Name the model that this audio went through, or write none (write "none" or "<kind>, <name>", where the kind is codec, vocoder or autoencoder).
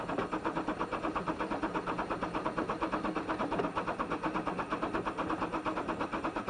none